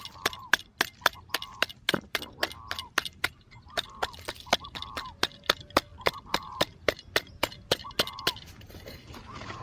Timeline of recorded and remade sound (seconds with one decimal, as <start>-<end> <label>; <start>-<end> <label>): 0.0-9.6 recorded